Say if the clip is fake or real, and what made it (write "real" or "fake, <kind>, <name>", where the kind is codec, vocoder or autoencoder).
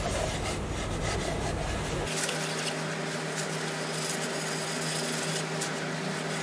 real